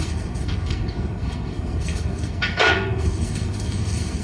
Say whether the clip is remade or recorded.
remade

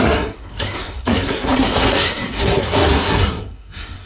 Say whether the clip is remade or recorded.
remade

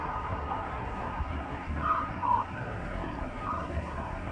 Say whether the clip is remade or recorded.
remade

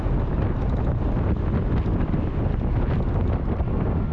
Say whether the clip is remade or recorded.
recorded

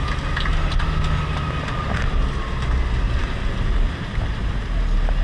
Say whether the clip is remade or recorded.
recorded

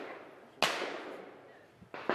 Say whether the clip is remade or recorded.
recorded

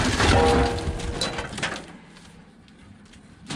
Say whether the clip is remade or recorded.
recorded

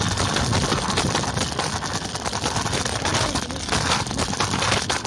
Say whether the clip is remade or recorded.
recorded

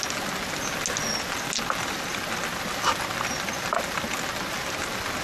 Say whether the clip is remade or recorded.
recorded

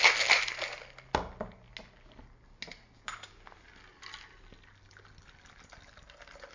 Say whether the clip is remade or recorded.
recorded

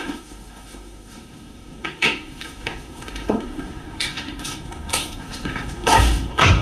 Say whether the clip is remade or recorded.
remade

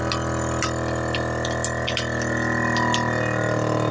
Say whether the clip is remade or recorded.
recorded